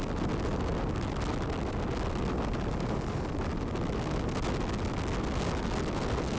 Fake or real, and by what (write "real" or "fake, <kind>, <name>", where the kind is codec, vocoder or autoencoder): real